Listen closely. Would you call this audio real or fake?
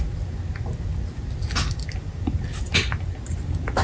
real